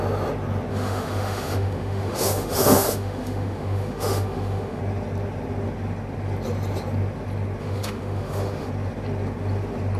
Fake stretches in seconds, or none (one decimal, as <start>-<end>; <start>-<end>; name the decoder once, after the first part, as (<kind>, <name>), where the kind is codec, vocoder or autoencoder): 0.7-4.8 (autoencoder, DAC-VAE); 7.6-8.7